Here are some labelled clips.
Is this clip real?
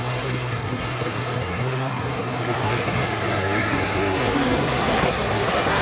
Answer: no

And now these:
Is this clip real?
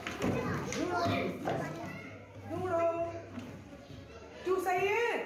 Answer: yes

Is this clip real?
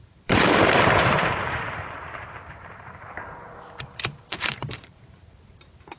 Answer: no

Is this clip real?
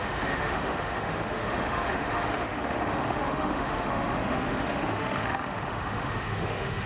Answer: no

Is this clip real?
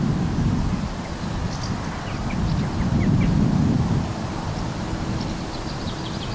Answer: yes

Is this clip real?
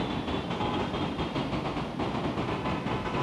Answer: yes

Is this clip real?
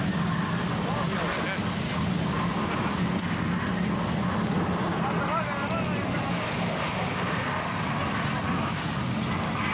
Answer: yes